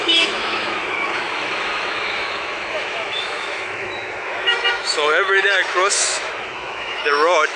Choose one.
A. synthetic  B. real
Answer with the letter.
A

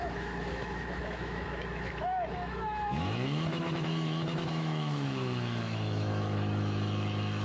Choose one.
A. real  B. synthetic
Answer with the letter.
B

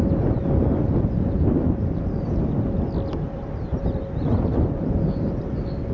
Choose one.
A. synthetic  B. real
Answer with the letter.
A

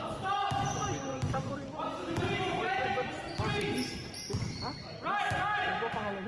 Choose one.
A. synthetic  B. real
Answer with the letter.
B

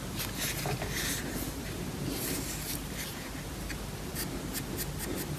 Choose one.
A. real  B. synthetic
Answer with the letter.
A